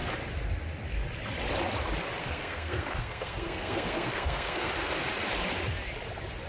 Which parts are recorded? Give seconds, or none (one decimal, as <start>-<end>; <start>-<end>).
0.0-2.2; 4.7-6.5